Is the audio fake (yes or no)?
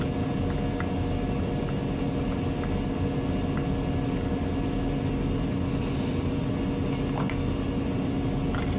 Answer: no